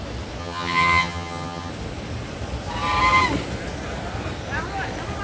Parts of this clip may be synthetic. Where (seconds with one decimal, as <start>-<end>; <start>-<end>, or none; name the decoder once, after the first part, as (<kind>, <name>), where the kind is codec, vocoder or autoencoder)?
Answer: 0.4-1.7 (vocoder, HiFi-GAN)